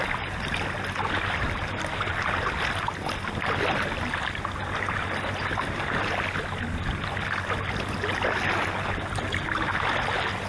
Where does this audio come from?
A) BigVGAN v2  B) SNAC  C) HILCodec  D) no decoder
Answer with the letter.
D